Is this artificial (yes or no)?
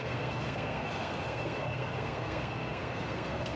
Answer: yes